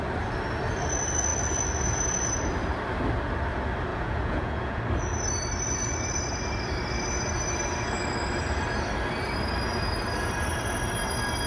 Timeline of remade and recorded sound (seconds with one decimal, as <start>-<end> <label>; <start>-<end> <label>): 0.0-3.9 recorded; 3.9-4.8 remade; 4.8-11.5 recorded